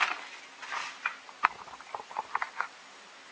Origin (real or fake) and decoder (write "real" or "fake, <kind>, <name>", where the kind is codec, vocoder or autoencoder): real